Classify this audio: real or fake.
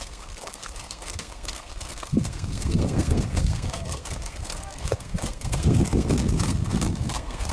fake